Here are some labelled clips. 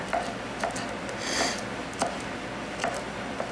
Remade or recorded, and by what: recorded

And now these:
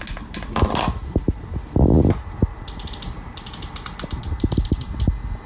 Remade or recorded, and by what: recorded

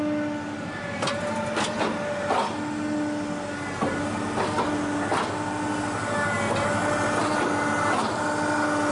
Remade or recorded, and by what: recorded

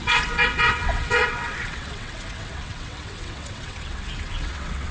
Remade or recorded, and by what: remade, vocoder, WaveNeXt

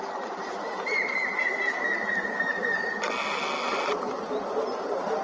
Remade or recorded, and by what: recorded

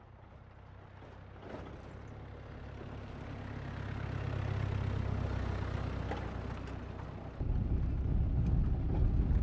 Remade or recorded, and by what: recorded